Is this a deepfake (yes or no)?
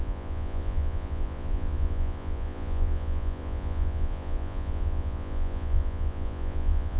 yes